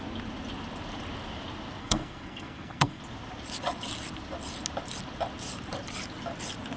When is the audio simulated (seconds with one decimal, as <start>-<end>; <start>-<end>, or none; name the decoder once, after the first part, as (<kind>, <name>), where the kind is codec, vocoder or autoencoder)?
1.8-3.0 (codec, SNAC)